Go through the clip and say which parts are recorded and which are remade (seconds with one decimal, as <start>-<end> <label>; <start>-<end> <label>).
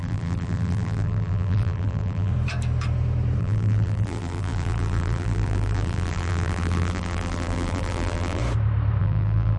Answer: 0.0-2.3 remade; 2.3-3.4 recorded; 3.4-8.4 remade; 8.4-9.0 recorded; 9.0-9.6 remade